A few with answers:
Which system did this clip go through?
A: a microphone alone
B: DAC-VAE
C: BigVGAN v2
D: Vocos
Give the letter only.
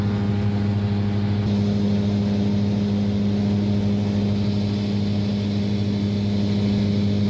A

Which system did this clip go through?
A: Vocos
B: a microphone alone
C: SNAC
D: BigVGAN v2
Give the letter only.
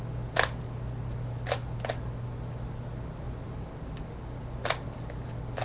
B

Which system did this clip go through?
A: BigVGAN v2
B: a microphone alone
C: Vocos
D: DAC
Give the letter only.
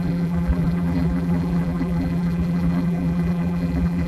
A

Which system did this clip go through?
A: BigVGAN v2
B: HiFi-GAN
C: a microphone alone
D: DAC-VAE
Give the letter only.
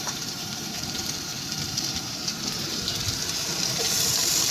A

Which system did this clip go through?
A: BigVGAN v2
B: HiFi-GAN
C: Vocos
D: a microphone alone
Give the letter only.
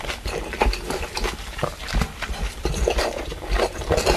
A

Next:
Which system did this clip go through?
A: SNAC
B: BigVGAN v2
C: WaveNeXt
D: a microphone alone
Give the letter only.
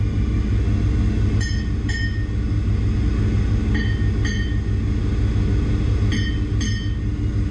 D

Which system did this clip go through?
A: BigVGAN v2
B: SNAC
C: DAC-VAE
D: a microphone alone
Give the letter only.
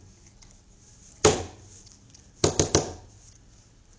D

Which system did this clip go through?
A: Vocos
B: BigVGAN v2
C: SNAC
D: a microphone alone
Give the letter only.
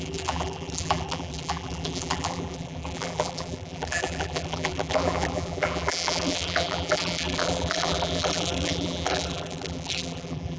B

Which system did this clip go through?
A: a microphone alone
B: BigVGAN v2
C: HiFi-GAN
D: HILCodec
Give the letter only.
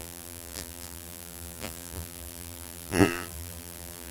B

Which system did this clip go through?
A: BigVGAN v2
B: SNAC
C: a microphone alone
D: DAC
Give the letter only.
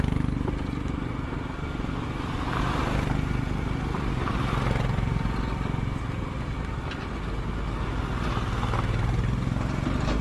C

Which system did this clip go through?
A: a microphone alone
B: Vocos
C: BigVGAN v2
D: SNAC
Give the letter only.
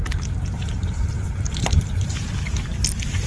C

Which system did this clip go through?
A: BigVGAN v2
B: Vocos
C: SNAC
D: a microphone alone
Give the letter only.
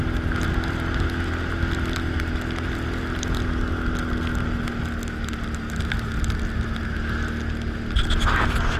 D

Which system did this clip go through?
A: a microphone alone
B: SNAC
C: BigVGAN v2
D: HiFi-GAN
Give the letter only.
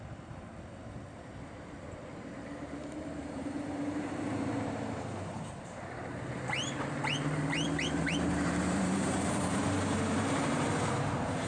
C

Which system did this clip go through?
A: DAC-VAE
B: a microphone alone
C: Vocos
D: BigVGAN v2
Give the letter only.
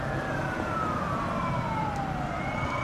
B